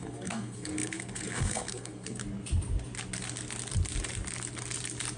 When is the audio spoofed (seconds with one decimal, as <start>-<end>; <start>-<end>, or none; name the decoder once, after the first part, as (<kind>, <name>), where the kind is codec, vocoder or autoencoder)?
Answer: 0.0-2.2 (codec, SNAC)